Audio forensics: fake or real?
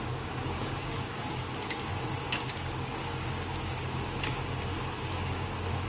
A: fake